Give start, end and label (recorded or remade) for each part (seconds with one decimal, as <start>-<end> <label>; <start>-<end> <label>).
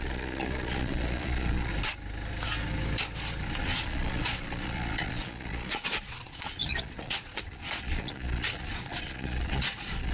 0.0-1.7 remade; 1.7-3.6 recorded; 3.6-10.1 remade